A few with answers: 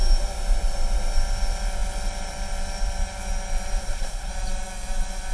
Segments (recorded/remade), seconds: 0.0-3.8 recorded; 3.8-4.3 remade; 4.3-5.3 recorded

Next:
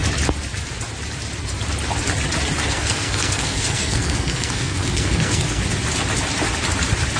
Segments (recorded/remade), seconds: 0.0-2.6 recorded; 2.6-5.6 remade; 5.6-7.2 recorded

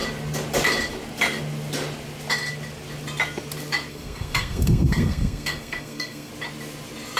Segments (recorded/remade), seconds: 0.0-3.9 recorded; 3.9-6.3 remade; 6.3-7.2 recorded

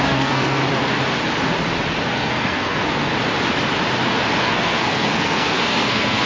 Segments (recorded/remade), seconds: 0.0-0.6 remade; 0.6-2.1 recorded; 2.1-3.1 remade; 3.1-4.4 recorded; 4.4-6.3 remade

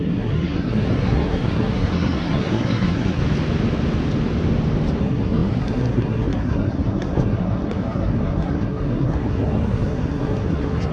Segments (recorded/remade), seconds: 0.0-3.2 remade; 3.2-5.0 recorded; 5.0-10.9 remade